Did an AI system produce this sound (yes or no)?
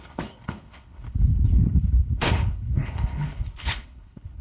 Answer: yes